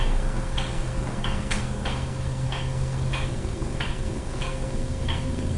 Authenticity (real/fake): fake